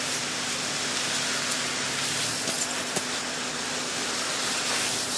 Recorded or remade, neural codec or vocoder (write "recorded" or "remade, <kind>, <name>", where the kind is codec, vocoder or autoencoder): recorded